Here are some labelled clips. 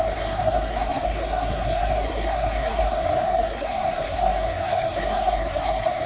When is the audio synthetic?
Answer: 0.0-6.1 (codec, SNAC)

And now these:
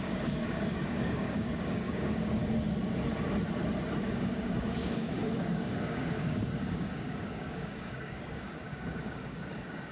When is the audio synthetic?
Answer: 0.0-2.4 (codec, DAC); 4.0-9.9

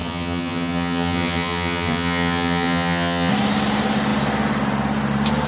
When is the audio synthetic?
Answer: 0.0-3.3 (vocoder, HiFi-GAN)

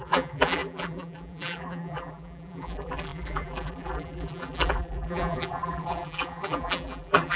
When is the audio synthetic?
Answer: 0.0-7.4 (vocoder, BigVGAN v2)